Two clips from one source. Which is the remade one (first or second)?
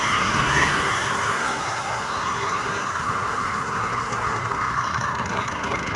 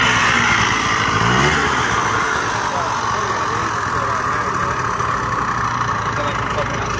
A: first